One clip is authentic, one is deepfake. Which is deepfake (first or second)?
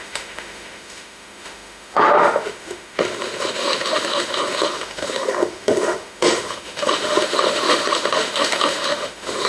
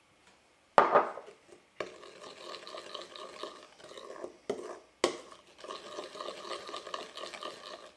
first